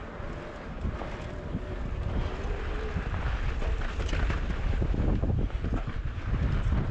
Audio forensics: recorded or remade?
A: recorded